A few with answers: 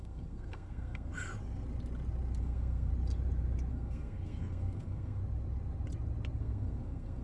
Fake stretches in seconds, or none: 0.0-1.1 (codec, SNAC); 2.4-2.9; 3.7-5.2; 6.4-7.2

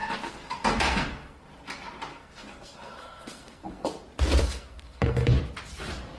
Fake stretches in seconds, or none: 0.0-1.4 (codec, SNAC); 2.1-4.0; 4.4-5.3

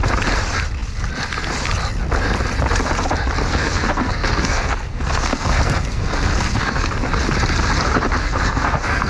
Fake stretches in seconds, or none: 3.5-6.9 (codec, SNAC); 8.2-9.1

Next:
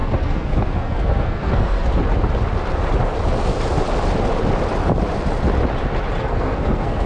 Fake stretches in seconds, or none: 0.0-1.9 (codec, SNAC); 6.2-7.1

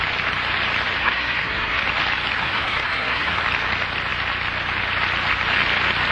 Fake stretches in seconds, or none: 1.0-1.8 (codec, SNAC); 2.4-3.4

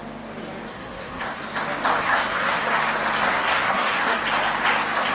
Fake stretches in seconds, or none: 0.7-1.4 (codec, SNAC); 2.0-2.6; 3.2-4.2